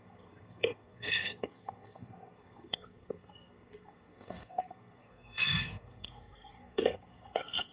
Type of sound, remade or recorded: remade